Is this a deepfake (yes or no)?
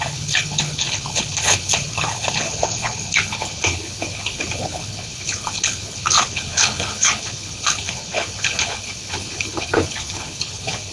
yes